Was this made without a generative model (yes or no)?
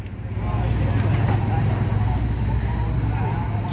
yes